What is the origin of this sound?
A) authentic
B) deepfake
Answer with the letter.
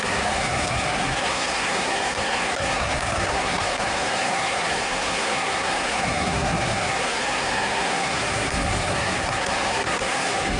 B